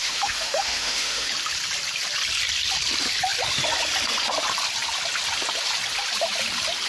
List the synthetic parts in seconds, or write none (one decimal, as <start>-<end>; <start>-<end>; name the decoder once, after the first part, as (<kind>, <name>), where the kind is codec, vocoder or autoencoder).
0.0-1.3 (autoencoder, DAC-VAE)